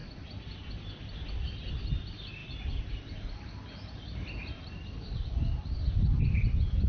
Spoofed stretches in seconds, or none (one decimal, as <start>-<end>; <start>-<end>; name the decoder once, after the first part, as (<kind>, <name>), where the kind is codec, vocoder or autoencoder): none